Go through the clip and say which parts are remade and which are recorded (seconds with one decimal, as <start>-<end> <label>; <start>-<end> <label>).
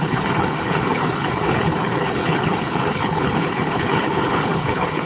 0.0-5.1 remade